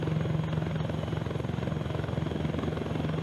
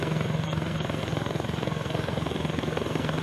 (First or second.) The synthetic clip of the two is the second